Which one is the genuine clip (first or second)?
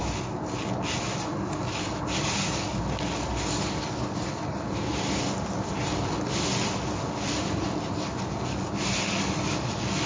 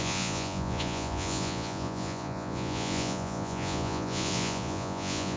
first